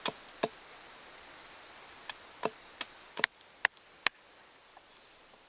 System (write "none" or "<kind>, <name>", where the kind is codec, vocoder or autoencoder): none